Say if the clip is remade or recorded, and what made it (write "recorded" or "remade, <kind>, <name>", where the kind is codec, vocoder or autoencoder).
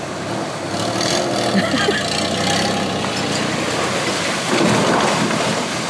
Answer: recorded